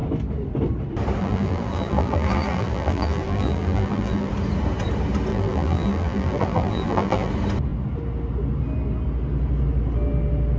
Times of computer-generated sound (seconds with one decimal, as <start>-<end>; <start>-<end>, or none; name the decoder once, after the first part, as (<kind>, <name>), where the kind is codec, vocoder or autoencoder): 1.2-4.3 (vocoder, BigVGAN v2); 5.3-7.3